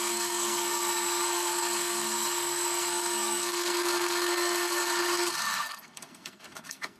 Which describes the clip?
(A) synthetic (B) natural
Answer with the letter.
A